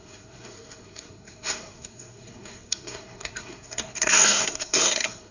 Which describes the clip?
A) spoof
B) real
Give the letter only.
A